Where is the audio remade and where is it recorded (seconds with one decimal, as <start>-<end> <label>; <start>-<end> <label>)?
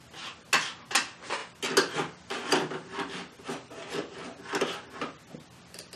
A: 0.0-6.0 recorded